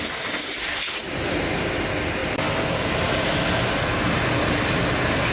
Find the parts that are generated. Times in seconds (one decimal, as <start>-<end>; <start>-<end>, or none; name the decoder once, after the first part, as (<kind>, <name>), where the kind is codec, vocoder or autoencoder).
1.0-1.6 (vocoder, BigVGAN v2); 2.2-3.7